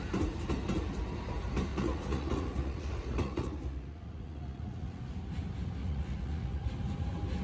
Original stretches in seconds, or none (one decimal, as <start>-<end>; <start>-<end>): 0.0-1.7; 5.0-5.8; 6.7-7.4